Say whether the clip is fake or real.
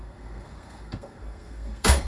fake